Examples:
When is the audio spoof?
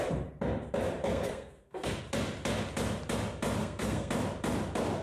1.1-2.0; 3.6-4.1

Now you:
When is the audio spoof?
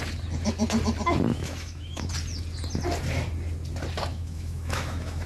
1.3-2.1; 4.1-5.3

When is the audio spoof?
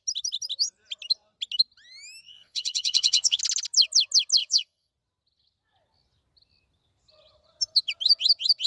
2.2-3.4; 4.4-4.9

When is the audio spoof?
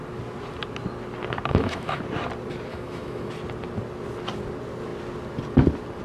1.5-2.0; 2.7-3.3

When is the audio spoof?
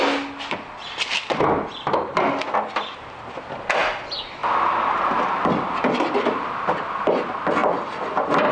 none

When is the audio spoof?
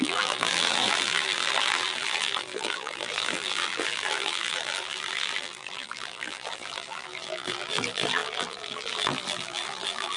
0.0-10.2